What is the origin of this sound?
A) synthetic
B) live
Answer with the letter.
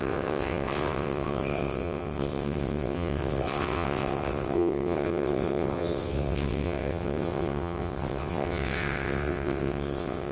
A